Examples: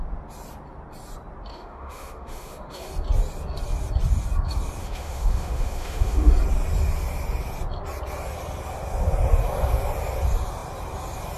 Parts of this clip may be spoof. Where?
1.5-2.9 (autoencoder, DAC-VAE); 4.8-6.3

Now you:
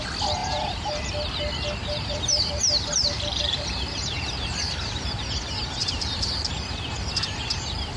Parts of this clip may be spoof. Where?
0.4-1.1 (vocoder, BigVGAN v2); 1.8-5.1; 5.8-6.5

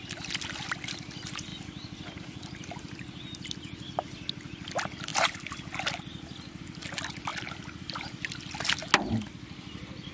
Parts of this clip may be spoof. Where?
none

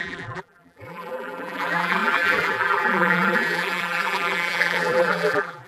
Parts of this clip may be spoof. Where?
0.0-5.7 (vocoder, BigVGAN v2)

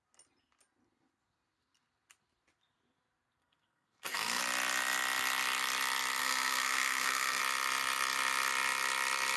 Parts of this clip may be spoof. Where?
3.4-4.4 (codec, SNAC); 6.2-7.4